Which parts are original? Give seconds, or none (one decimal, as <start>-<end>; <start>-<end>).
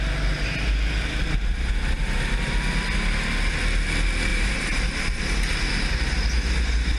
0.0-4.3; 5.2-7.0